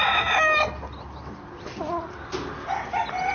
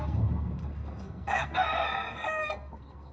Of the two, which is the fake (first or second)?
second